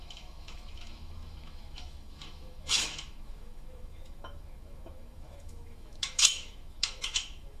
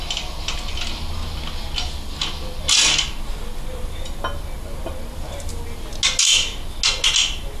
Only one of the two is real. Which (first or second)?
second